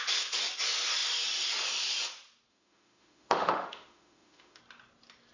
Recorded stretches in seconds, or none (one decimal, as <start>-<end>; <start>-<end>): 0.0-2.5; 4.6-5.3